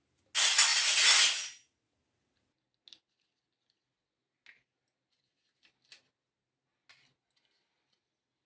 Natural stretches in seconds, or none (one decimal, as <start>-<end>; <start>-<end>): 0.0-8.5